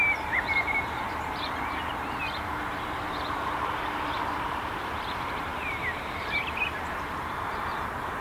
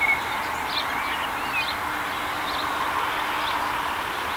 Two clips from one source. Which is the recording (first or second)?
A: second